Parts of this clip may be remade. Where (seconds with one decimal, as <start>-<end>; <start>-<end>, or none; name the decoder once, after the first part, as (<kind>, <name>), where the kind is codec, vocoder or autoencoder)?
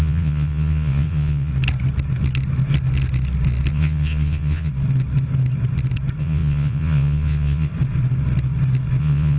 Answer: 0.0-1.5 (vocoder, Vocos); 3.7-4.7; 6.2-7.7; 9.0-9.4